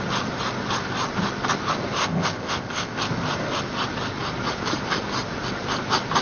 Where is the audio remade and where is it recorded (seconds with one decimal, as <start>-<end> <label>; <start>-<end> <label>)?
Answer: 0.0-2.0 recorded; 2.0-3.0 remade; 3.0-6.2 recorded